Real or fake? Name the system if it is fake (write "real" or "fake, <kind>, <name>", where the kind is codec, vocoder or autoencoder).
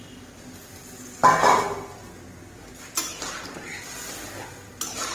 real